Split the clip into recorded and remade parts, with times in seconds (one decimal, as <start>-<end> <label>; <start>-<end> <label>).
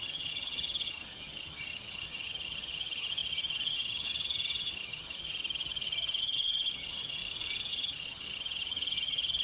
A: 0.0-7.2 remade; 7.2-7.7 recorded; 7.7-9.4 remade